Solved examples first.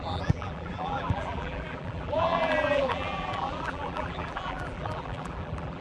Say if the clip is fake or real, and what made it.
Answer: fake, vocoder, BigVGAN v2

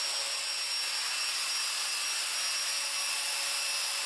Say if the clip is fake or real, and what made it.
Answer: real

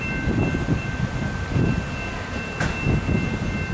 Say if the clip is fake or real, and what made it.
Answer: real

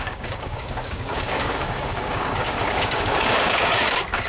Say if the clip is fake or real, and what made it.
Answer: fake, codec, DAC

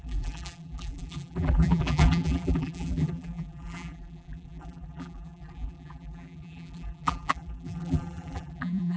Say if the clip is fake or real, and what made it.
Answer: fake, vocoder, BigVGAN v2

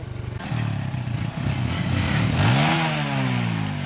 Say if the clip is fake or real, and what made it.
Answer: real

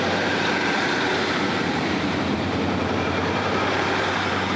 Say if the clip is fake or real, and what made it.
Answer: fake, vocoder, BigVGAN v2